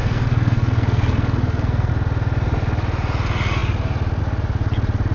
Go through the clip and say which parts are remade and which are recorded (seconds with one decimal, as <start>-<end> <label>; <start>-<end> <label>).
0.0-1.9 remade; 1.9-5.1 recorded